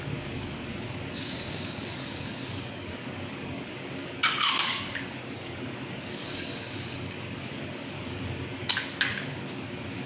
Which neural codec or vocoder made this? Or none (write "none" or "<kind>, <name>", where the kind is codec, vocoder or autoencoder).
codec, DAC